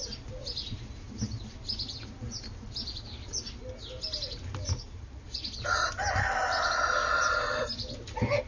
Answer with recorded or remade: recorded